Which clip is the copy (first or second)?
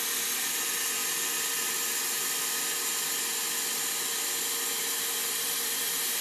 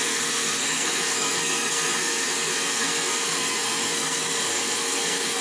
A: second